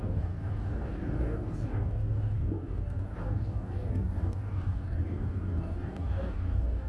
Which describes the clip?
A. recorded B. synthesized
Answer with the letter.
B